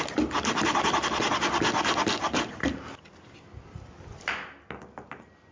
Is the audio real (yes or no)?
yes